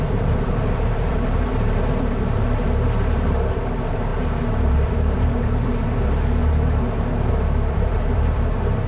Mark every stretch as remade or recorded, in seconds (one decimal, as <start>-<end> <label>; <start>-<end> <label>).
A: 0.0-6.4 remade; 6.4-7.3 recorded; 7.3-8.9 remade